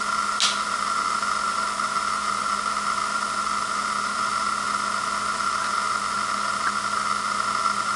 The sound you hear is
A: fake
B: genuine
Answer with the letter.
B